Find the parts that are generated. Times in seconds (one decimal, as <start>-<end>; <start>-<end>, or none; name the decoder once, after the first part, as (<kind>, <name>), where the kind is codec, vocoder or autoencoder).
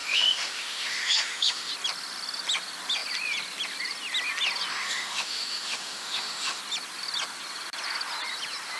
0.0-1.7 (autoencoder, DAC-VAE); 4.7-6.6